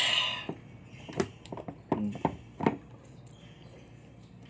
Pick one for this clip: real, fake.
real